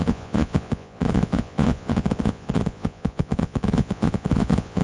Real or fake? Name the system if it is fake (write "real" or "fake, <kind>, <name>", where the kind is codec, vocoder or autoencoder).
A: fake, vocoder, Vocos